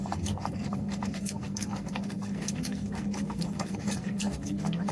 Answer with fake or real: fake